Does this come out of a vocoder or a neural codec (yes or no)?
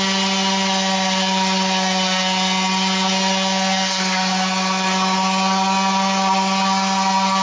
no